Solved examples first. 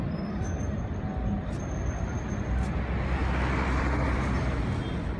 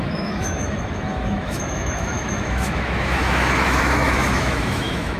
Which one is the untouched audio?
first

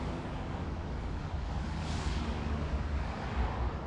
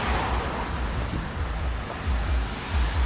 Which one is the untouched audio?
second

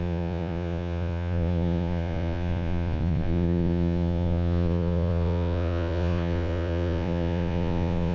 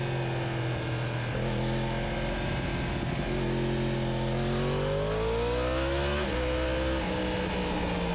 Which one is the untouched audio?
second